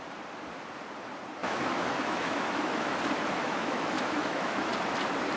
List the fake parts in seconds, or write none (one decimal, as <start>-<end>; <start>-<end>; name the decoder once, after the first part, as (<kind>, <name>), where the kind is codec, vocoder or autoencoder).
1.4-3.0 (autoencoder, DAC-VAE); 3.4-4.7